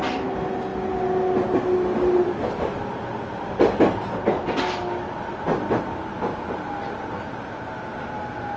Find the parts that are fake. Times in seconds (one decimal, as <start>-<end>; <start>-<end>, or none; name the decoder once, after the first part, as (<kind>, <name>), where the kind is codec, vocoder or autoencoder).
none